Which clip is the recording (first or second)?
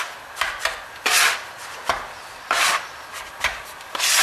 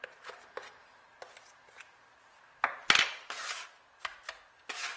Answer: second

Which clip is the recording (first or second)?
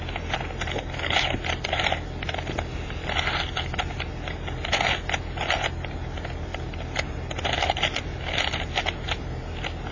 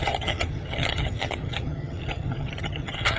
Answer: first